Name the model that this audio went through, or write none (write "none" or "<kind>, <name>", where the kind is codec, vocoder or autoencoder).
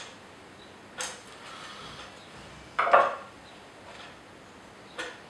none